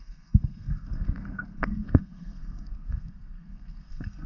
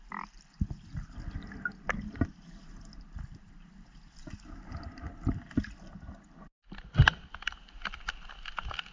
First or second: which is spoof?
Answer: first